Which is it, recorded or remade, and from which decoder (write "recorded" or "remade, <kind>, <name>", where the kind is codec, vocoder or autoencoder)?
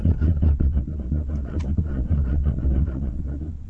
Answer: remade, vocoder, Vocos